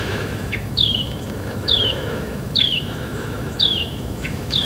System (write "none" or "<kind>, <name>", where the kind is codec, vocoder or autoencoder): autoencoder, DAC-VAE